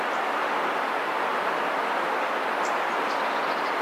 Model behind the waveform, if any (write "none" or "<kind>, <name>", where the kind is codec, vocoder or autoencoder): none